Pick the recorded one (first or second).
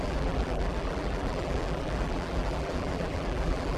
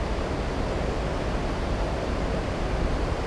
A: second